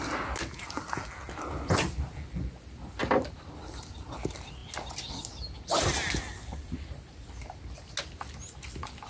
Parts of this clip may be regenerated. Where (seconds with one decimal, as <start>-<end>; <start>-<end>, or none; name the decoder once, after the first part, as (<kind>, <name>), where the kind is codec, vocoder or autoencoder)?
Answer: none